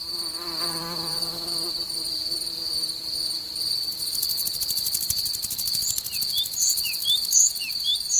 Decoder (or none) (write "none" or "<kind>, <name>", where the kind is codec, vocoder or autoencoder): vocoder, BigVGAN v2